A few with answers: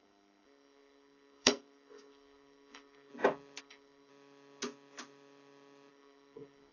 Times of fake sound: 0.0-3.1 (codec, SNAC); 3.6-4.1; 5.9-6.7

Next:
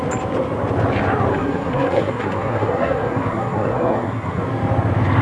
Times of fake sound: 1.3-4.4 (codec, SNAC)

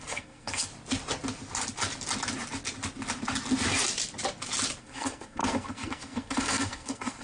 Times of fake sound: 0.0-0.7 (codec, SNAC); 4.8-7.2

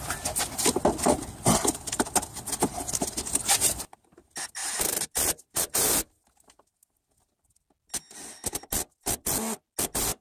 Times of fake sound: none

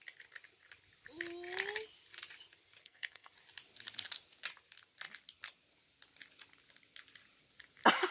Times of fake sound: 2.8-3.3 (codec, SNAC)